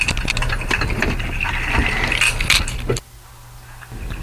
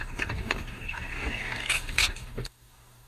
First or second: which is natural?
first